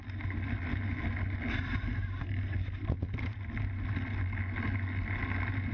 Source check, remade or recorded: recorded